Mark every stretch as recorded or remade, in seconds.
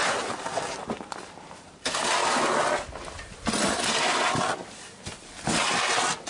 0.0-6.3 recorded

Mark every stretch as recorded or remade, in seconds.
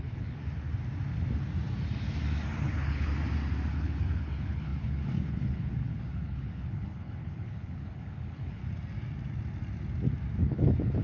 0.0-0.4 remade; 0.4-2.6 recorded; 2.6-3.1 remade; 3.1-3.7 recorded; 3.7-8.6 remade; 8.6-10.4 recorded; 10.4-11.0 remade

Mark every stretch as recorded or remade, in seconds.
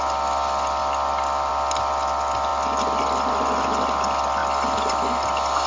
0.0-5.7 recorded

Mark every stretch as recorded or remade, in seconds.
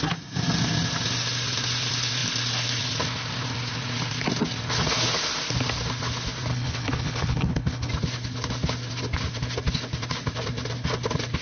0.0-6.5 recorded; 6.5-7.9 remade; 7.9-11.4 recorded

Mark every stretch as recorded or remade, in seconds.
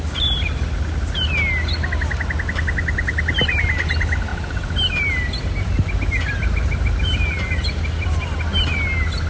0.0-9.3 recorded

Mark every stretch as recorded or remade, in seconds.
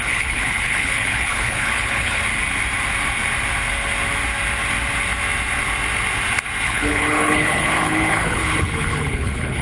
0.0-2.2 remade; 2.2-6.6 recorded; 6.6-9.6 remade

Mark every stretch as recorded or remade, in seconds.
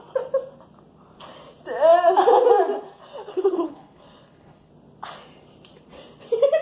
0.0-3.3 recorded; 3.3-4.7 remade; 4.7-6.6 recorded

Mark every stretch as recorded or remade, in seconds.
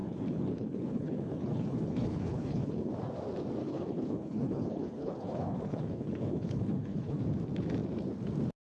0.0-2.9 remade; 2.9-3.6 recorded; 3.6-7.2 remade; 7.2-8.6 recorded